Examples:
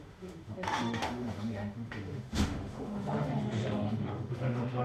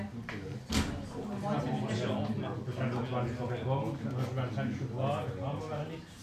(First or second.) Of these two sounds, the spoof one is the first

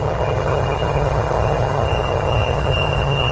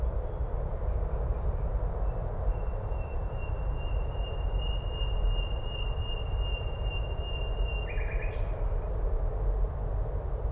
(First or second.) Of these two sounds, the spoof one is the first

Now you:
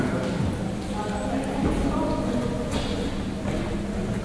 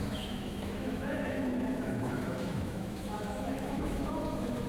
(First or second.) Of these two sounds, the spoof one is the second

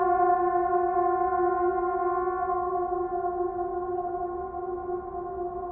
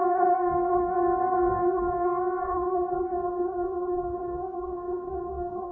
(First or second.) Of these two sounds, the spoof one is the second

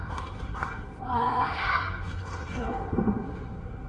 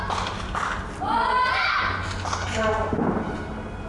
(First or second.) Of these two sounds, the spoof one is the first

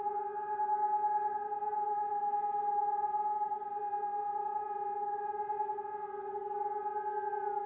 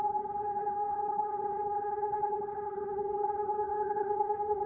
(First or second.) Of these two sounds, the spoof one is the second